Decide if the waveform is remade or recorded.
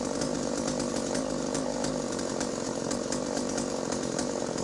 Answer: remade